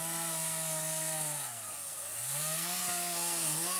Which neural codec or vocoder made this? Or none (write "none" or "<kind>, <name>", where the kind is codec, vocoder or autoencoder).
codec, SNAC